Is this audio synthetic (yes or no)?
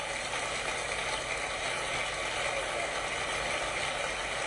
no